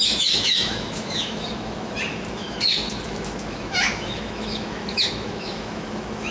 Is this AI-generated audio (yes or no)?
yes